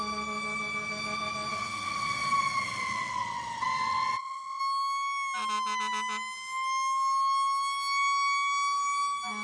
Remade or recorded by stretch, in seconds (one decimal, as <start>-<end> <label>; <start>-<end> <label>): 0.0-1.5 recorded; 1.5-4.6 remade; 4.6-9.4 recorded